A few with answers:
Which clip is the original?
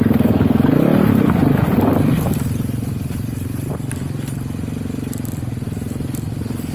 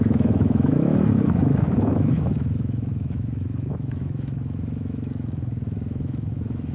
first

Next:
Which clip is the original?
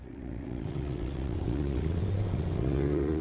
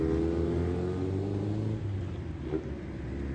second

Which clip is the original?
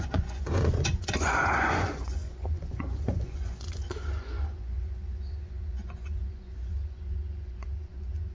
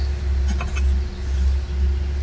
second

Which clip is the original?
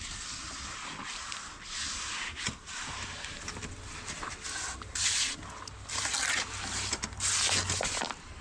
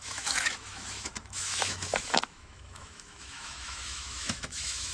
first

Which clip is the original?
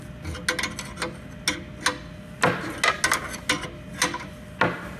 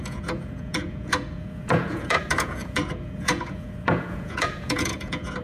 first